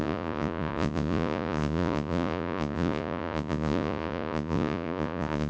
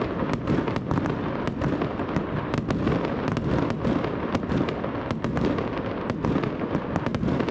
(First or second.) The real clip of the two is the second